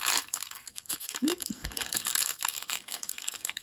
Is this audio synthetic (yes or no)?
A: yes